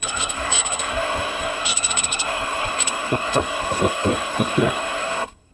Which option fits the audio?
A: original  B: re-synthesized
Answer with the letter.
B